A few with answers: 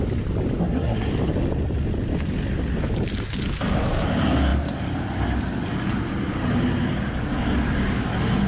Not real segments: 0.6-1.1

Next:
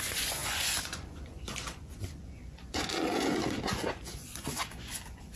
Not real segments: 0.0-5.4

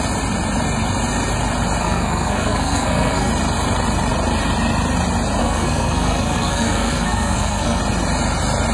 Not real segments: 1.8-3.3; 5.4-7.8

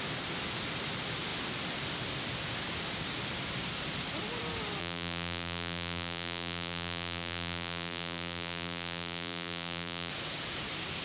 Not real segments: 4.8-10.1

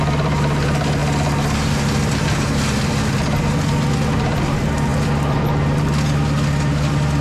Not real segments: none

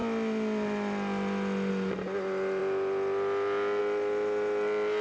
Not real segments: none

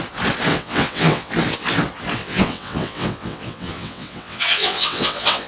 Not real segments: 0.5-1.3; 2.2-5.5